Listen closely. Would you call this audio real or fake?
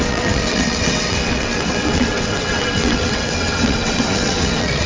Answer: fake